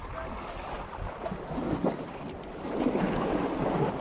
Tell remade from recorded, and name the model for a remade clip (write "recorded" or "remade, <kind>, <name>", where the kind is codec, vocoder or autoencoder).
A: recorded